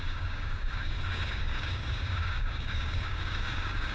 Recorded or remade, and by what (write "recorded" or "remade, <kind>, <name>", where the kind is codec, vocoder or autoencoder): remade, codec, DAC